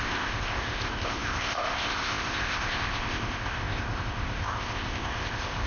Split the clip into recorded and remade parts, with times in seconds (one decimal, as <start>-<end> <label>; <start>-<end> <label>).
0.0-5.7 remade